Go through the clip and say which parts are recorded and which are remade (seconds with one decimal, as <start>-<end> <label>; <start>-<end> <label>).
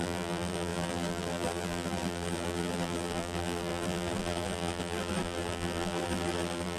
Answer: 0.0-6.8 remade